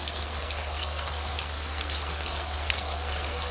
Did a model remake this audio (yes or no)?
yes